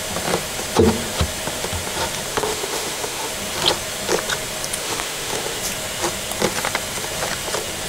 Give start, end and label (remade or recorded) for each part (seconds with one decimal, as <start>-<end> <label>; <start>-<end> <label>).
0.0-2.3 recorded; 2.3-3.3 remade; 3.3-4.8 recorded; 4.8-5.6 remade; 5.6-7.9 recorded